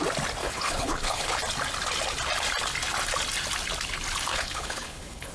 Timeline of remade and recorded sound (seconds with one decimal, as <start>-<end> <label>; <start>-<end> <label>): 0.0-0.4 recorded; 0.4-1.4 remade; 1.4-4.3 recorded; 4.3-5.3 remade